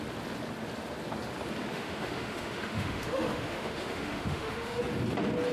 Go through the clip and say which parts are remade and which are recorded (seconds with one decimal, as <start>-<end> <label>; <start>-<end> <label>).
0.0-1.7 recorded; 1.7-4.8 remade; 4.8-5.5 recorded